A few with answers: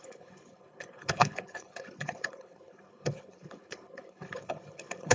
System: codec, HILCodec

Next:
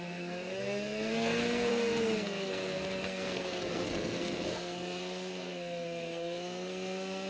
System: codec, SNAC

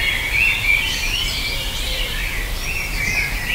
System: none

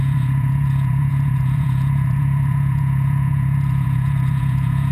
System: vocoder, Vocos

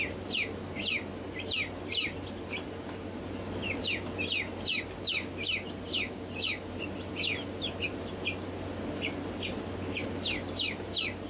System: none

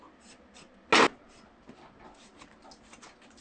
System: none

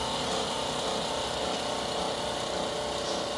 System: none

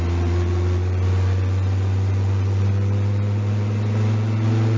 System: none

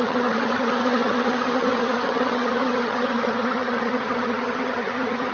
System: vocoder, HiFi-GAN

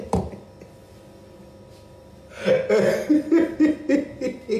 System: none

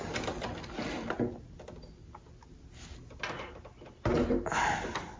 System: none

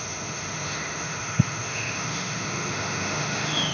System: autoencoder, DAC-VAE